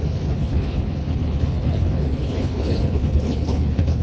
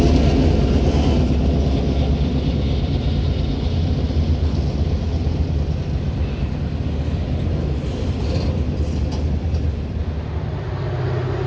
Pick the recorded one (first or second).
second